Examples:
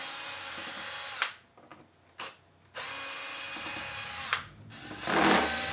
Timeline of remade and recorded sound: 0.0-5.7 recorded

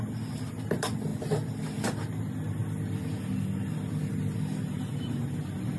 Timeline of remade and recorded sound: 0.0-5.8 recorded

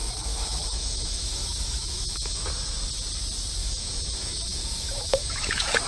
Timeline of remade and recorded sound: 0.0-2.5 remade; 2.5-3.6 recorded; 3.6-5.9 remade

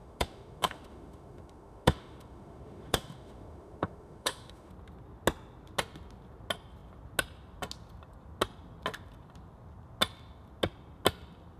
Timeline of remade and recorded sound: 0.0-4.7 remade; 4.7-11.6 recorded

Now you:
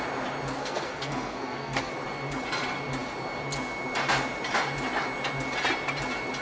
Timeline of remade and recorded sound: 0.0-0.6 recorded; 0.6-1.9 remade; 1.9-6.4 recorded

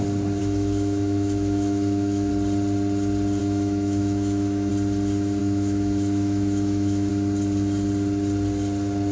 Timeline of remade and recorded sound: 0.0-0.4 recorded; 0.4-2.3 remade; 2.3-3.4 recorded; 3.4-4.7 remade; 4.7-5.4 recorded; 5.4-7.1 remade; 7.1-9.1 recorded